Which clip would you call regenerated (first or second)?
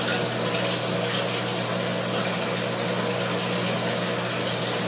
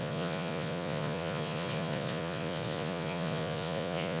second